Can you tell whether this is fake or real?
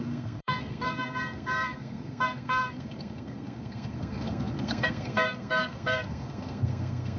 fake